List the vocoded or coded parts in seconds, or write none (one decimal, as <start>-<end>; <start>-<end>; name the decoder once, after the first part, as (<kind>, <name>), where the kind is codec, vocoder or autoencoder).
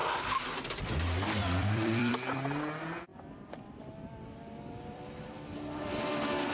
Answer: 0.0-0.8 (vocoder, BigVGAN v2); 1.4-2.1; 3.1-6.1